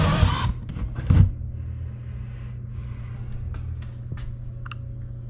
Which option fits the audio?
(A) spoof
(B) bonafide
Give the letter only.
B